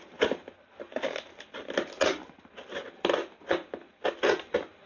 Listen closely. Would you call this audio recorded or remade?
recorded